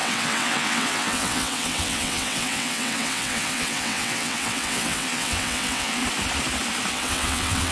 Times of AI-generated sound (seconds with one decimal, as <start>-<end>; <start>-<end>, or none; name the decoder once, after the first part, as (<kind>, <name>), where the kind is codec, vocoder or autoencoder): 0.0-6.0 (vocoder, WaveNeXt); 6.9-7.7

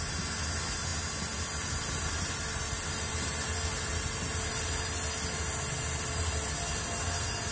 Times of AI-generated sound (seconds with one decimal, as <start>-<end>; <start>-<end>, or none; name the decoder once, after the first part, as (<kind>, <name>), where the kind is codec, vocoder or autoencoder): none

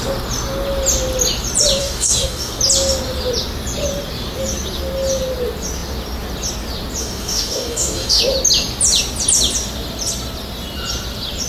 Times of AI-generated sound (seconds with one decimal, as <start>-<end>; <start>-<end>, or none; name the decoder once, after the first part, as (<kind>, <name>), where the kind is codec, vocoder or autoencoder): 1.8-2.6 (codec, DAC); 7.0-8.2